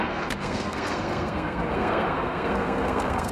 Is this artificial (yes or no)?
yes